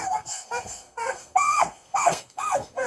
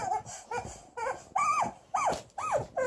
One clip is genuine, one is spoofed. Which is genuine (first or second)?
second